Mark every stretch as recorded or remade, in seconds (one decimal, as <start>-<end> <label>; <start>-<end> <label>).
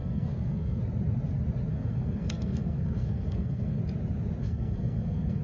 0.0-0.8 remade; 0.8-1.7 recorded; 1.7-3.8 remade; 3.8-4.4 recorded; 4.4-5.4 remade